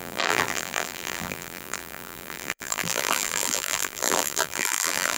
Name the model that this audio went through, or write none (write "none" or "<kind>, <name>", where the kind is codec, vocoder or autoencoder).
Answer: vocoder, BigVGAN v2